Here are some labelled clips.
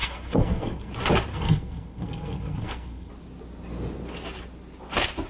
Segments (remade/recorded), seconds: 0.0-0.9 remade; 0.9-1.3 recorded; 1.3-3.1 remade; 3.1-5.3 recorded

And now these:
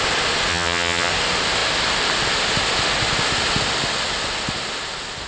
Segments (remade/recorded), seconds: 0.0-0.5 recorded; 0.5-1.1 remade; 1.1-5.3 recorded

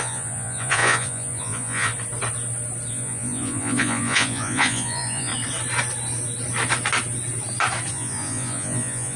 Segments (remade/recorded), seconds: 0.0-1.9 remade; 1.9-2.9 recorded; 2.9-5.3 remade; 5.3-7.9 recorded; 7.9-9.2 remade

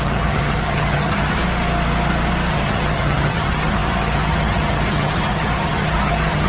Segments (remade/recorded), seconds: 0.0-1.4 remade; 1.4-2.5 recorded; 2.5-6.5 remade

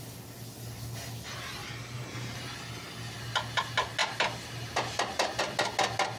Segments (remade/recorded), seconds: 0.0-1.6 recorded; 1.6-2.6 remade; 2.6-4.0 recorded; 4.0-5.4 remade; 5.4-6.2 recorded

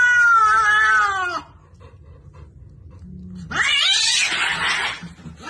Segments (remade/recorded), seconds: 0.0-5.5 recorded